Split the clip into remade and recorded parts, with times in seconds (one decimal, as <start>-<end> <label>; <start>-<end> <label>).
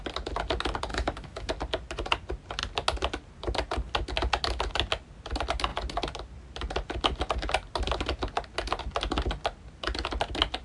0.0-0.9 recorded; 0.9-1.5 remade; 1.5-10.6 recorded